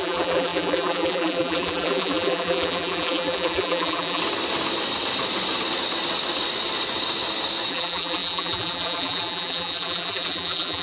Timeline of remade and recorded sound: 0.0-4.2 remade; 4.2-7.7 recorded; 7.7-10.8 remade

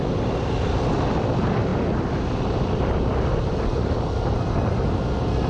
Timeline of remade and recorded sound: 0.0-5.5 recorded

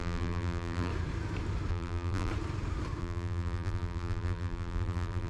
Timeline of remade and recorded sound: 0.0-0.9 remade; 0.9-1.7 recorded; 1.7-2.3 remade; 2.3-3.0 recorded; 3.0-5.3 remade

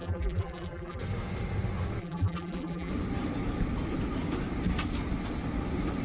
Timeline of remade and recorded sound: 0.0-1.0 remade; 1.0-2.0 recorded; 2.0-2.9 remade; 2.9-6.0 recorded

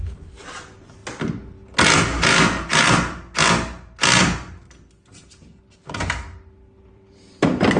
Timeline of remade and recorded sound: 0.0-1.0 remade; 1.0-5.7 recorded; 5.7-7.8 remade

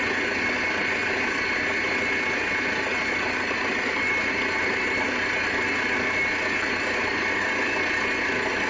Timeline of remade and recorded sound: 0.0-8.7 recorded